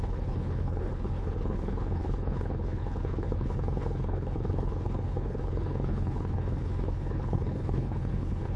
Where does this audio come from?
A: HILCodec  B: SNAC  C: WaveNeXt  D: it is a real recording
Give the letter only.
A